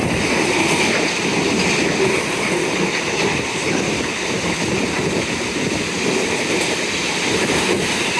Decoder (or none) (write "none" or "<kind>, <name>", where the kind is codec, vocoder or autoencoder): vocoder, BigVGAN v2